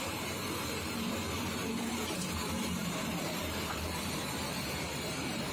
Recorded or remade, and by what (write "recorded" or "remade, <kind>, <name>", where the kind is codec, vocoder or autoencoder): remade, vocoder, BigVGAN v2